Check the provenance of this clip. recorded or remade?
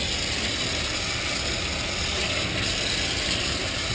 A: recorded